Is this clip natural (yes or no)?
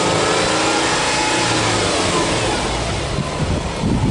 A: yes